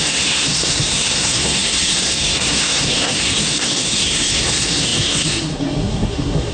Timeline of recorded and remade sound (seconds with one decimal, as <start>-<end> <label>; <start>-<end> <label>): 0.0-6.5 remade